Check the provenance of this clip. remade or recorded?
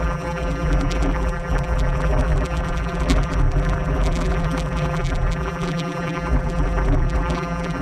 remade